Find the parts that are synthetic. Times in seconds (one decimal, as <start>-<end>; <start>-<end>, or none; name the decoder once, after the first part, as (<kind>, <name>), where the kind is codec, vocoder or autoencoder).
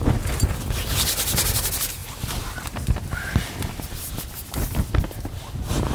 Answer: 2.0-4.2 (vocoder, BigVGAN v2)